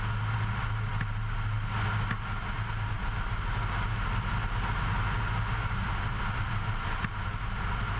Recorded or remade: recorded